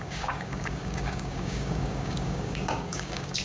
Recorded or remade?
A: remade